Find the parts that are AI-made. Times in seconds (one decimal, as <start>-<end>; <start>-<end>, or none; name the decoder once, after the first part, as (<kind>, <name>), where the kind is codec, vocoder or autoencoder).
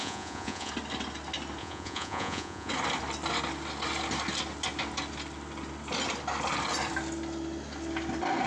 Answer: 0.0-0.7 (vocoder, Vocos); 1.6-2.7